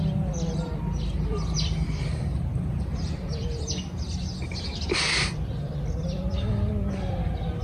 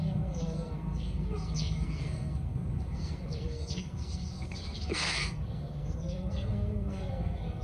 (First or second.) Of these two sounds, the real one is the first